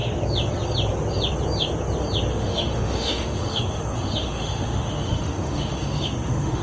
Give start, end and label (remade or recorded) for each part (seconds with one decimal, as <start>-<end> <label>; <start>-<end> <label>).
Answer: 0.0-2.3 recorded; 2.3-6.6 remade